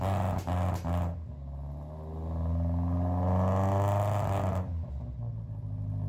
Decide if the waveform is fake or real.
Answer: real